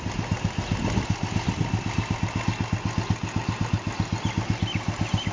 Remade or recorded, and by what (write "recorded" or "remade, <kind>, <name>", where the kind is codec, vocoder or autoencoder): recorded